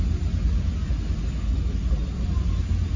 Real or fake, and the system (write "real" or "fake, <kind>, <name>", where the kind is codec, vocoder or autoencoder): real